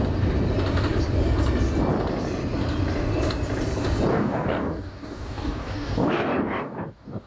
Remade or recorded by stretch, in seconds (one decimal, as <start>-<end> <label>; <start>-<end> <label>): 0.0-4.1 recorded; 4.1-7.3 remade